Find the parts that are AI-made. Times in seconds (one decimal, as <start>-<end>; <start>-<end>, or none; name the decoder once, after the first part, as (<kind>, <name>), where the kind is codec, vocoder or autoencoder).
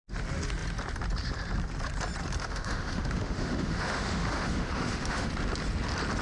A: 2.4-5.3 (autoencoder, DAC-VAE)